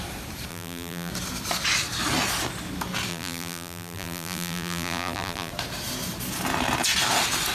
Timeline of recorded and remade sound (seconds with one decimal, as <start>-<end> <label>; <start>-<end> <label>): 0.0-0.5 recorded; 0.5-1.1 remade; 1.1-3.1 recorded; 3.1-5.5 remade; 5.5-7.5 recorded